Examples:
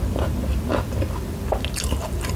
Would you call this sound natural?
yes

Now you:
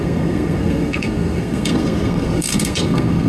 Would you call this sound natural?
no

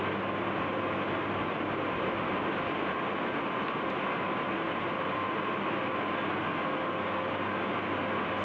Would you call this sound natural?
yes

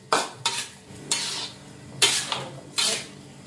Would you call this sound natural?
yes